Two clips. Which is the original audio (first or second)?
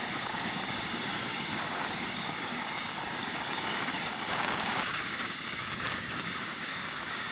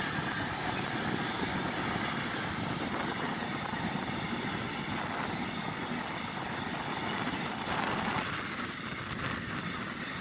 second